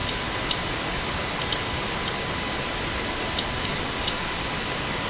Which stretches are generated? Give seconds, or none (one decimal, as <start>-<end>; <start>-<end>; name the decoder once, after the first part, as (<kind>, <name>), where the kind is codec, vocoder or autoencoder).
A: 3.7-4.4 (vocoder, Vocos)